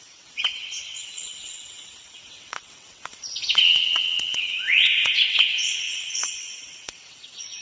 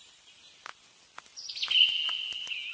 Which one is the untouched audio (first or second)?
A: second